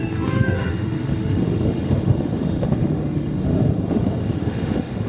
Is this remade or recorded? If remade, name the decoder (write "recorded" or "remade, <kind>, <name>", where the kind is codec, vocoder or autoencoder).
remade, autoencoder, DAC-VAE